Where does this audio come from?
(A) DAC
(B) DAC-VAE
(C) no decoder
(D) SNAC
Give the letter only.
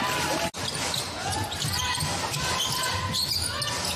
C